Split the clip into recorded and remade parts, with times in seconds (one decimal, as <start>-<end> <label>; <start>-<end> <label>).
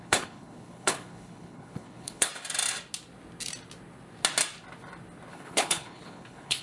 0.0-2.3 remade; 2.3-5.3 recorded; 5.3-6.6 remade